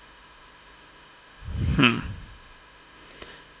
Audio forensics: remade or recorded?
remade